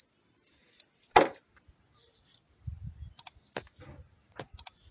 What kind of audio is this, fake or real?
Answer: real